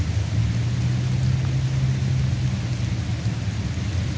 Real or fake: real